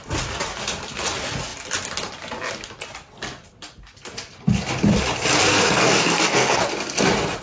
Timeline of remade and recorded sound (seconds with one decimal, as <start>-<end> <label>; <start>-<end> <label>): 0.0-5.5 recorded; 5.5-6.6 remade; 6.6-7.4 recorded